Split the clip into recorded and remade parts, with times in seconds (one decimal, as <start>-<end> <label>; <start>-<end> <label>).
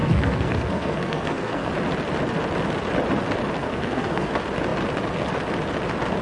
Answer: 0.0-1.7 remade; 1.7-3.6 recorded; 3.6-4.3 remade; 4.3-6.2 recorded